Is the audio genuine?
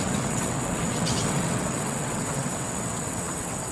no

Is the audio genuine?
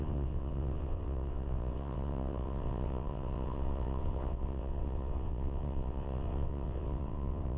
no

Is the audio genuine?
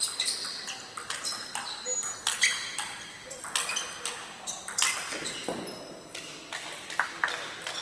yes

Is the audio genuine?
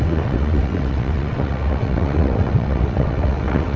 no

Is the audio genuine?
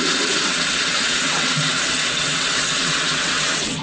no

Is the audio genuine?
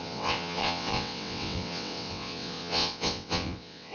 no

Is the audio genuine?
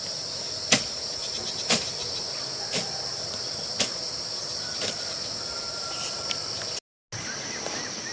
yes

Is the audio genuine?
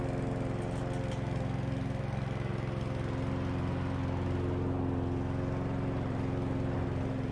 yes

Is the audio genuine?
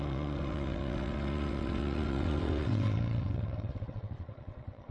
no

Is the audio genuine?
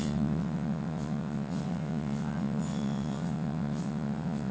no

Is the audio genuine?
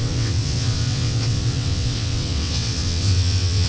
no